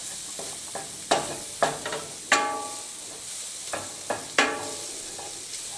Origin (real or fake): real